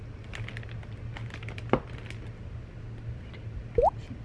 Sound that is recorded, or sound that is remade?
recorded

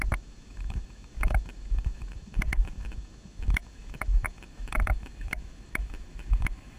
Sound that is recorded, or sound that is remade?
remade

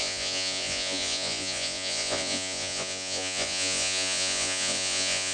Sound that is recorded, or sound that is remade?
remade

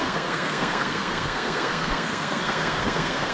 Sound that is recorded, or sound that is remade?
remade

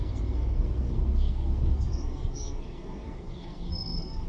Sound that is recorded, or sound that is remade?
remade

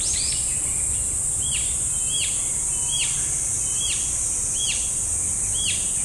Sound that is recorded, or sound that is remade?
recorded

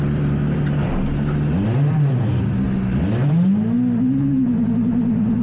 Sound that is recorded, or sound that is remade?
recorded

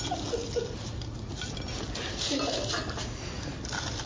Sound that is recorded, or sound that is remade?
recorded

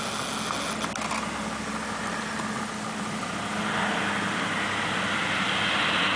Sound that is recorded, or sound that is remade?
recorded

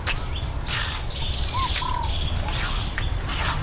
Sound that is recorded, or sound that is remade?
recorded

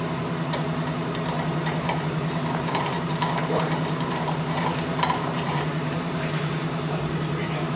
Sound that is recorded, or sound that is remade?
remade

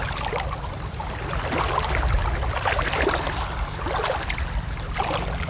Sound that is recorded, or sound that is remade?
recorded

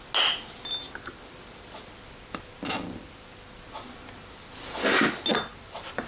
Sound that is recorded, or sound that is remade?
recorded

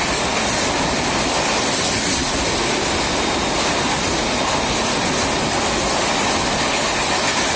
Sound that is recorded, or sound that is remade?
recorded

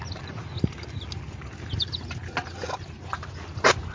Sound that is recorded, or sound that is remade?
recorded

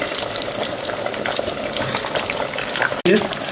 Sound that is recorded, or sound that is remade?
recorded